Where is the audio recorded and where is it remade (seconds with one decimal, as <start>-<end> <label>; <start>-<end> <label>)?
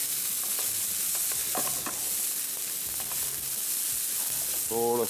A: 0.0-5.1 recorded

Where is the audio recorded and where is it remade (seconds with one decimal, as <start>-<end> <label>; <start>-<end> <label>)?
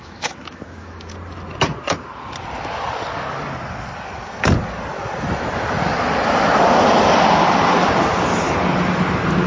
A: 0.0-1.1 remade; 1.1-9.5 recorded